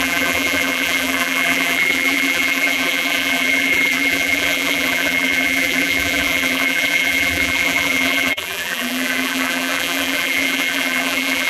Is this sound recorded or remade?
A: remade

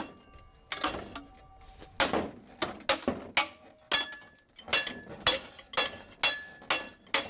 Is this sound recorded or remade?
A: recorded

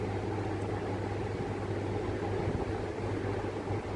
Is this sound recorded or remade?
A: recorded